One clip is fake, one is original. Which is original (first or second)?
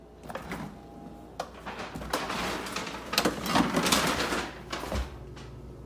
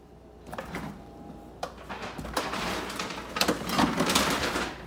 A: first